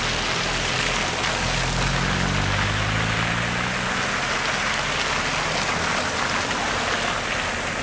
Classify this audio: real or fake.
real